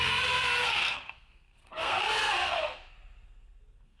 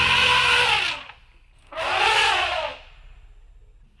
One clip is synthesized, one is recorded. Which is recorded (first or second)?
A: second